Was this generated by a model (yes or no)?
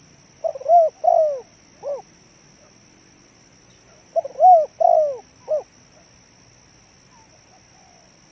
no